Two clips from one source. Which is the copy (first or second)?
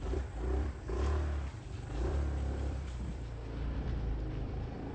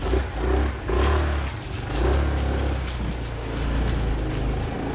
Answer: first